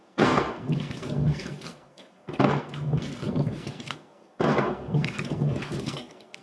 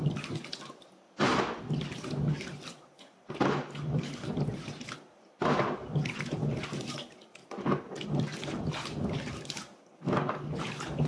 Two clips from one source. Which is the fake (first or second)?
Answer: first